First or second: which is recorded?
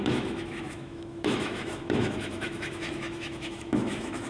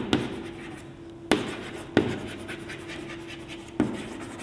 second